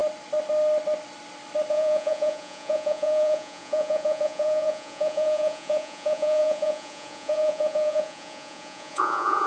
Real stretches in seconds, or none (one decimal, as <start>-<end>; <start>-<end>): 0.0-1.7